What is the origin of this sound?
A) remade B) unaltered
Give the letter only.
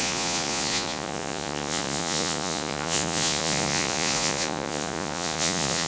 A